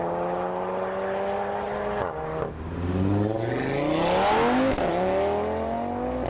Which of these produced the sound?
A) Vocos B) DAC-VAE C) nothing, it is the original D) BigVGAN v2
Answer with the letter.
C